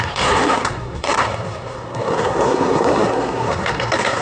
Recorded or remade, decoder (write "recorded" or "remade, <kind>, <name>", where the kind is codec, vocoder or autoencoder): remade, codec, SNAC